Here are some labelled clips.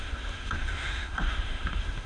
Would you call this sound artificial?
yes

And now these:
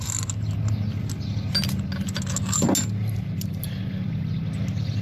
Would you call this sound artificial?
no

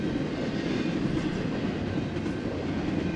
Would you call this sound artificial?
no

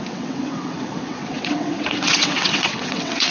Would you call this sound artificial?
yes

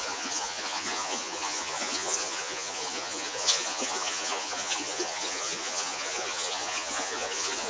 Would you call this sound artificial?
yes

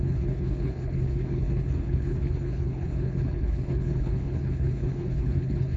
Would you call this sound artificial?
yes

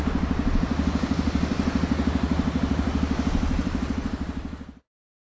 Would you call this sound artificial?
no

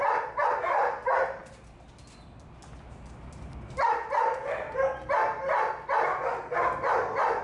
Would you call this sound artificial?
no